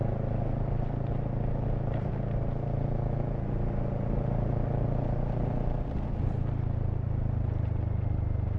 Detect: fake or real real